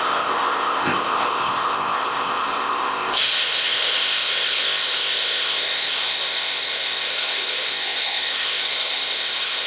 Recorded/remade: remade